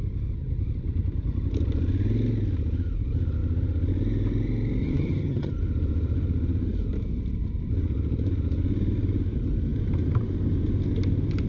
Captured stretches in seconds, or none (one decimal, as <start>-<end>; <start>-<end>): 0.0-4.8; 5.5-11.5